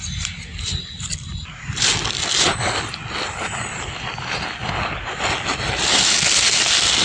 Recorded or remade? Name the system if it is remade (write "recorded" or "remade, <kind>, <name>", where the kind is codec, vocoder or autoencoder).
recorded